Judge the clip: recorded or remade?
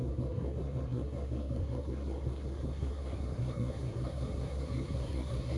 remade